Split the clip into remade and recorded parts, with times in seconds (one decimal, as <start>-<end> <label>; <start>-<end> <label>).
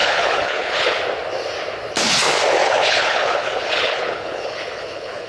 0.0-1.0 remade; 1.0-2.6 recorded; 2.6-5.3 remade